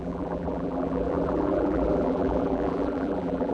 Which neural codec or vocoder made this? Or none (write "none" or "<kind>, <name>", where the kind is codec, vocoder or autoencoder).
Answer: vocoder, BigVGAN v2